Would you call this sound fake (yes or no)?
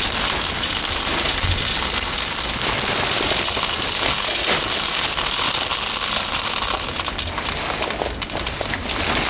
no